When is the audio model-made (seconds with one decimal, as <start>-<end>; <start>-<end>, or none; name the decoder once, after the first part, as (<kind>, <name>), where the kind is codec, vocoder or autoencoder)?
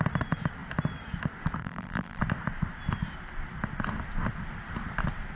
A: 1.6-2.2 (vocoder, BigVGAN v2)